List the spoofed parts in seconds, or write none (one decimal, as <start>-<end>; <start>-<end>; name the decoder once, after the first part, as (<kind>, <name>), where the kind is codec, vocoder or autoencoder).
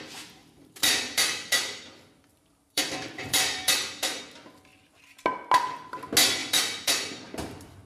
0.4-4.2 (vocoder, BigVGAN v2); 6.4-7.9